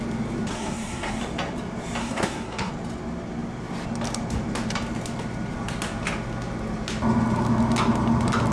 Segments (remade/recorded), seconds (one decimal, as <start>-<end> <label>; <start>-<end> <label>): 0.0-0.5 recorded; 0.5-1.2 remade; 1.2-2.0 recorded; 2.0-2.7 remade; 2.7-8.5 recorded